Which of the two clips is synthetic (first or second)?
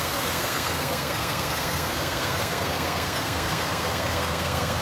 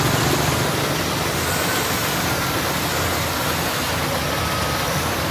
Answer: first